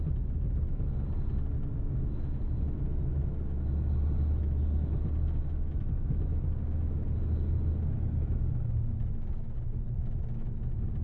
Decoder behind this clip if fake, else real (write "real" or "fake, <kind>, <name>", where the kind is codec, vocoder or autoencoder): real